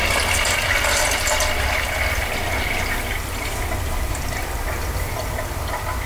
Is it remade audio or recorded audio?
remade